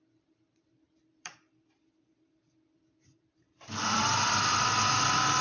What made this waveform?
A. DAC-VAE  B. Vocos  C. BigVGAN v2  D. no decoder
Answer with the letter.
C